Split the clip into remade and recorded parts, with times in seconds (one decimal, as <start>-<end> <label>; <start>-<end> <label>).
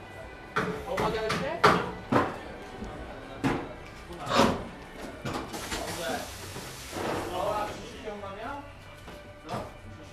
0.0-0.7 recorded; 0.7-1.3 remade; 1.3-10.1 recorded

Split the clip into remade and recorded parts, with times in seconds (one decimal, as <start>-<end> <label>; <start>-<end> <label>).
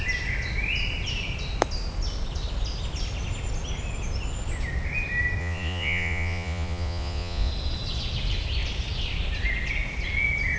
0.0-5.4 recorded; 5.4-7.5 remade; 7.5-10.6 recorded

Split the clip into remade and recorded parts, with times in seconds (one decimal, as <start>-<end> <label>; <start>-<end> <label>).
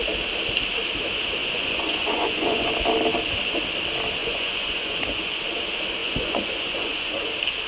0.0-1.4 recorded; 1.4-2.7 remade; 2.7-4.2 recorded; 4.2-5.4 remade; 5.4-6.0 recorded; 6.0-7.3 remade; 7.3-7.7 recorded